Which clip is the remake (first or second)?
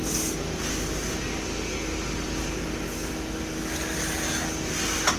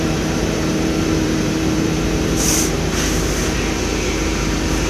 second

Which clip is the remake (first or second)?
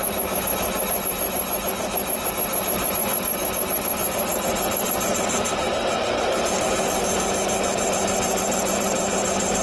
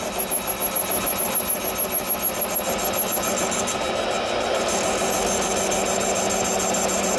first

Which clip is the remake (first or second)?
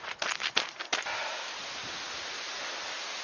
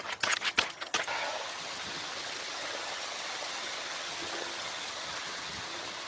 second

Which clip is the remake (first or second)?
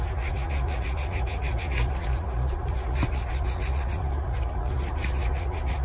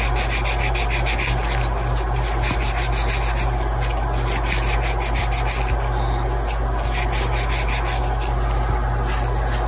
first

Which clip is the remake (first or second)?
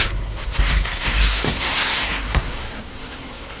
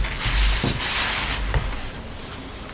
first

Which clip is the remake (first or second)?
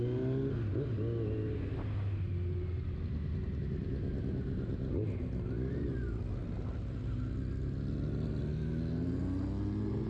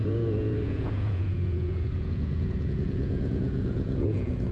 second